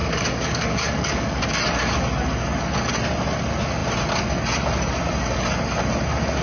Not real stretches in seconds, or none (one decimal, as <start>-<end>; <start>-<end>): 0.0-1.4